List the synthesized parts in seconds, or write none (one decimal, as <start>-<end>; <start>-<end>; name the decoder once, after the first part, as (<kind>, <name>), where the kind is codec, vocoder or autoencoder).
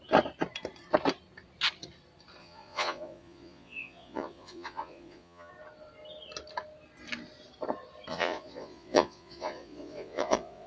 2.4-5.5 (vocoder, Vocos); 8.1-10.7